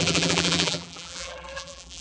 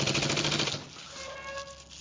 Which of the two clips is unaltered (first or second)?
second